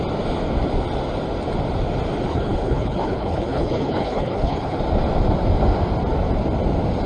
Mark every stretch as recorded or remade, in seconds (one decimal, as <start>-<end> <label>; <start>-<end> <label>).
0.0-2.3 recorded; 2.3-4.8 remade; 4.8-7.1 recorded